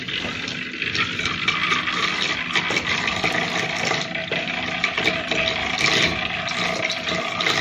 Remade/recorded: recorded